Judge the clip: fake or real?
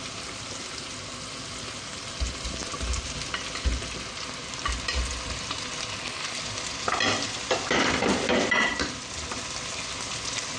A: real